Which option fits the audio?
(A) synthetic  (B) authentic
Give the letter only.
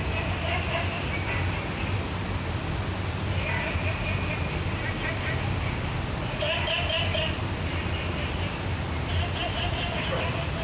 B